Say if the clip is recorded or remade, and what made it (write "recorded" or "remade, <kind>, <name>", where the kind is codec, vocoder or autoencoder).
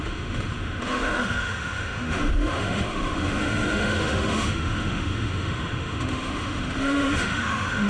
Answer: remade, autoencoder, DAC-VAE